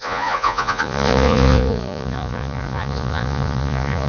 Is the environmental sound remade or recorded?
remade